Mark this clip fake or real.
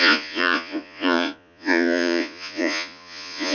fake